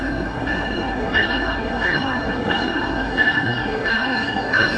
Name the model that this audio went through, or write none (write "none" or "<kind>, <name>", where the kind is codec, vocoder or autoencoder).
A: codec, SNAC